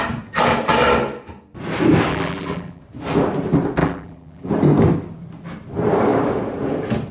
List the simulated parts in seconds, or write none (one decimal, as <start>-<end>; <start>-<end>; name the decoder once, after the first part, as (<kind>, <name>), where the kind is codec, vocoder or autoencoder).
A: 2.1-2.8 (vocoder, BigVGAN v2); 3.8-4.5